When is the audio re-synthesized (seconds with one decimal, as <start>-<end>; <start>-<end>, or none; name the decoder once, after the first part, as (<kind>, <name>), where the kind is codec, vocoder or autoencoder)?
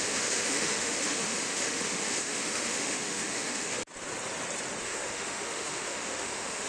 0.0-3.8 (autoencoder, DAC-VAE); 4.8-6.7